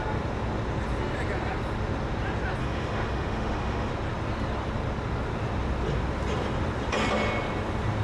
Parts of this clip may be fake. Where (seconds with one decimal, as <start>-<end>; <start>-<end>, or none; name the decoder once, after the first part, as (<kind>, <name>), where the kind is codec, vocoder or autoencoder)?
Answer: 2.6-3.9 (autoencoder, DAC-VAE)